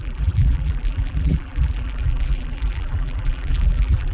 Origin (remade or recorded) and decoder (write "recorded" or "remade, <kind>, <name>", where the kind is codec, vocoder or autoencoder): remade, vocoder, BigVGAN v2